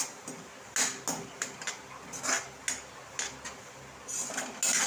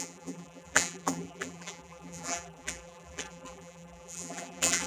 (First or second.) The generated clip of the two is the second